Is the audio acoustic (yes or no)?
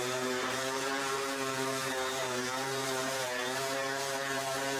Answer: no